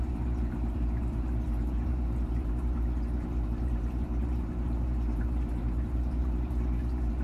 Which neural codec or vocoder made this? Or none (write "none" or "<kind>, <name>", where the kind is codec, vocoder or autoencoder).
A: vocoder, BigVGAN v2